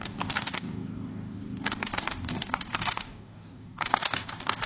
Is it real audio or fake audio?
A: fake